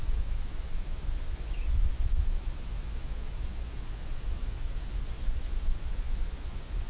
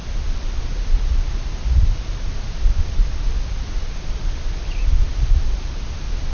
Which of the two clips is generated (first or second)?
first